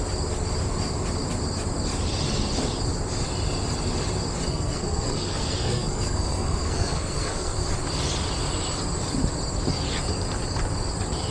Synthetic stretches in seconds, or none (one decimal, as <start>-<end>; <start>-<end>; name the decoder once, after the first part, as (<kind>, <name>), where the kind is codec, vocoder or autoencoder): 4.5-7.6 (codec, SNAC)